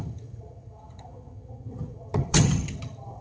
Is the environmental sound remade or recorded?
remade